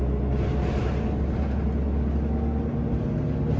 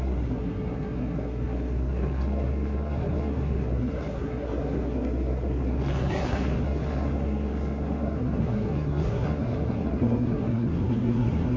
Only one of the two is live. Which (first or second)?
first